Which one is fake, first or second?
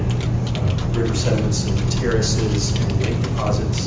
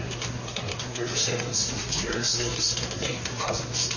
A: second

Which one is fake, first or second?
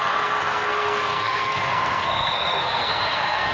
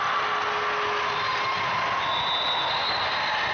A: first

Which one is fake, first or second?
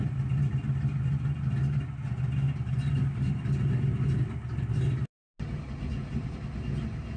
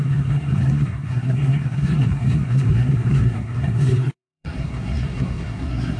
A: second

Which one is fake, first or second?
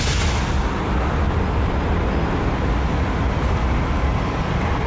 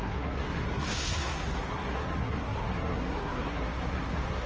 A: second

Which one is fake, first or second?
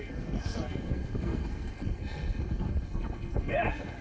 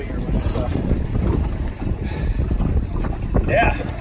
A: first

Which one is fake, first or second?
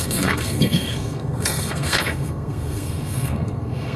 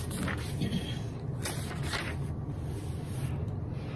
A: first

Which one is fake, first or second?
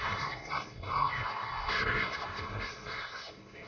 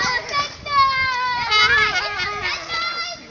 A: first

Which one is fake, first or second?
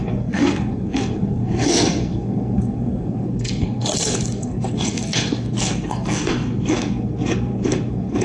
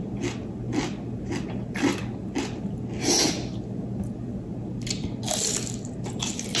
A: first